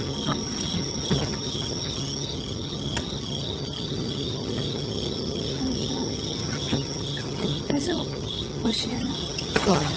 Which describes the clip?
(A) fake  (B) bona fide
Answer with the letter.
A